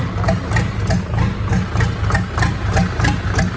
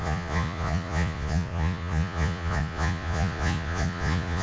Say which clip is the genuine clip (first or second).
first